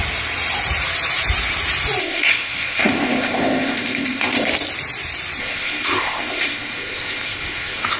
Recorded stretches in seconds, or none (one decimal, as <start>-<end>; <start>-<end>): 0.0-2.0; 4.5-5.4